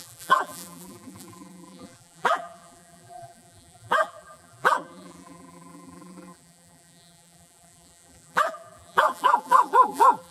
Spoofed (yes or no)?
yes